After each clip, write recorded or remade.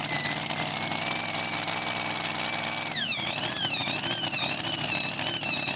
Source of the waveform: recorded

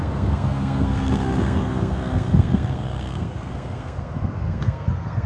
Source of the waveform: remade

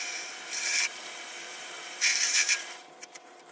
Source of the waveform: remade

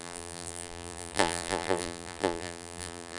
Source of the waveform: remade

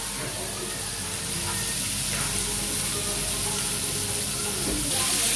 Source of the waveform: recorded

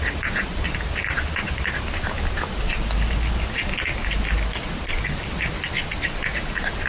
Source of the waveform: recorded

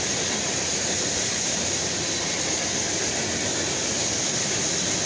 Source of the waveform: recorded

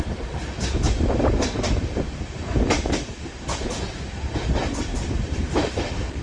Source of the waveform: recorded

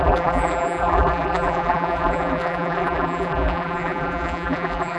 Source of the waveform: remade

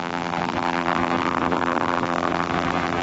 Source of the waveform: remade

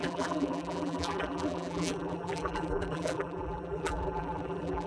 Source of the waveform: remade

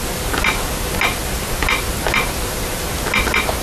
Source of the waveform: recorded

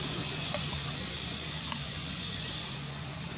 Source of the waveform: remade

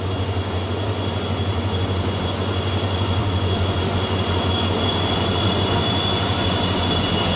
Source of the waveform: remade